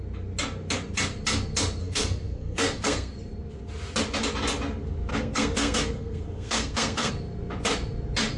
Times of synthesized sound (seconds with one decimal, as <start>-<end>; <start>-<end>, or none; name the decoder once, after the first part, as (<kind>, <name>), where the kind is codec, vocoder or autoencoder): 1.8-3.1 (codec, SNAC); 5.1-7.1